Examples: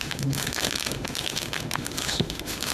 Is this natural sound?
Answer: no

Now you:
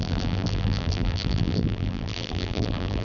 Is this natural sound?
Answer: no